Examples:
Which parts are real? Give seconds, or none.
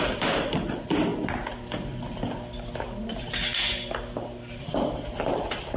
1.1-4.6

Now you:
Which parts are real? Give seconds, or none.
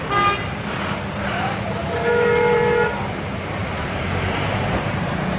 0.0-1.8; 3.2-3.6; 4.9-5.4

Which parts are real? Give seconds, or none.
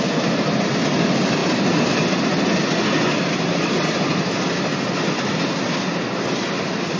0.0-7.0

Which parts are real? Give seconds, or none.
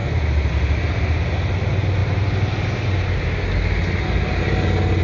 0.5-5.0